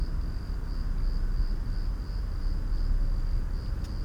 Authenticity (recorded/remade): recorded